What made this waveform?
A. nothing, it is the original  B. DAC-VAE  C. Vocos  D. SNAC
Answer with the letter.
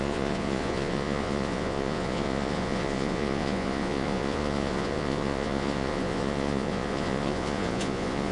C